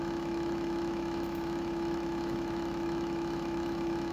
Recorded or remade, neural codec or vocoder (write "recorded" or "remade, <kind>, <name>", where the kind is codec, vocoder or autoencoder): remade, autoencoder, DAC-VAE